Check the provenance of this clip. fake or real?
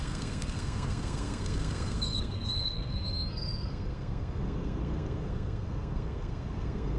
fake